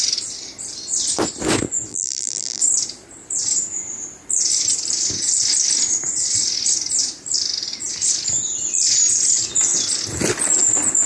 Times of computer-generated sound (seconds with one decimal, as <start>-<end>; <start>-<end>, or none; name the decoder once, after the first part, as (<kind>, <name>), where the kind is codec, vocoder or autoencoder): 1.9-2.6 (vocoder, BigVGAN v2)